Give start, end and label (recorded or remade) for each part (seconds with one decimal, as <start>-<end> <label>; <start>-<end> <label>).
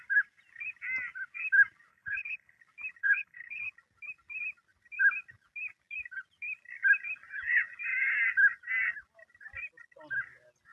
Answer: 0.0-1.9 recorded; 1.9-2.6 remade; 2.6-3.0 recorded; 3.0-3.7 remade; 3.7-10.7 recorded